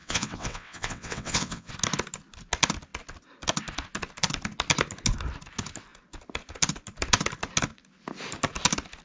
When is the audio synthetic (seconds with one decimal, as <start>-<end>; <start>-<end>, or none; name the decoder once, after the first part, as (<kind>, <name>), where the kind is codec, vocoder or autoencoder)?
0.0-1.7 (vocoder, WaveNeXt)